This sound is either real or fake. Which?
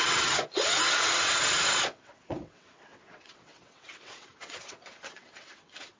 fake